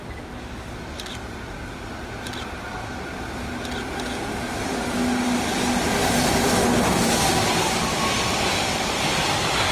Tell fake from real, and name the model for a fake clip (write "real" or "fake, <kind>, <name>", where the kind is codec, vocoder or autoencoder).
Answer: real